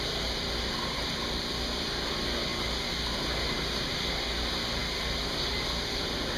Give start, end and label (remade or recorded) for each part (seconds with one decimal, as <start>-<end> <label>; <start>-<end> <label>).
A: 0.0-6.4 recorded